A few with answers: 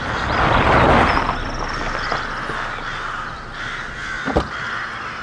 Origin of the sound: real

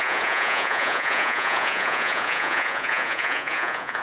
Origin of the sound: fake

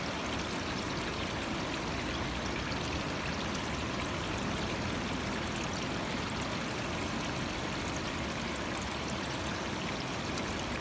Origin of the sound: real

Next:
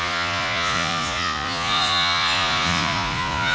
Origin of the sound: fake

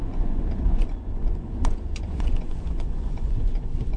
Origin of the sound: fake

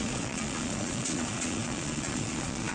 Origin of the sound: fake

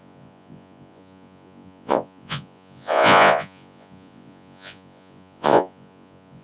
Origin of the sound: fake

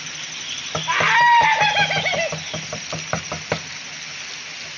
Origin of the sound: real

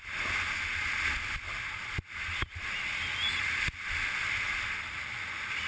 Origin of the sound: real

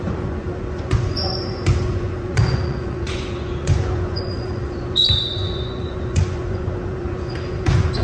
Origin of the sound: fake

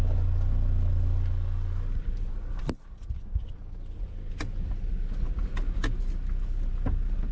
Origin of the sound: real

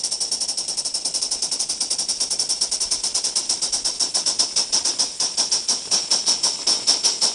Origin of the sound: real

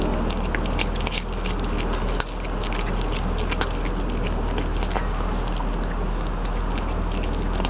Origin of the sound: real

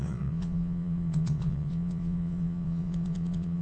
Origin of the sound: fake